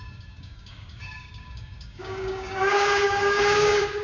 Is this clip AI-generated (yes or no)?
yes